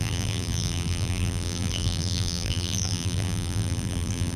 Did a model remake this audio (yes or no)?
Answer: yes